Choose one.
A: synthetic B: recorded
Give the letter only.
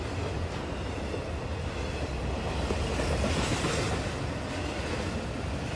B